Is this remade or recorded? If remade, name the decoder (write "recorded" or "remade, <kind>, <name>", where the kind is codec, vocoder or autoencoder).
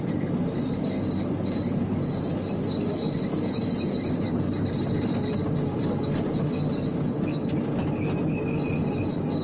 recorded